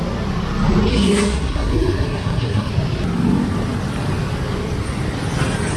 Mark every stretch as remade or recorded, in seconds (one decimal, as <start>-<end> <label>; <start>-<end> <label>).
0.0-0.9 recorded; 0.9-2.7 remade; 2.7-5.8 recorded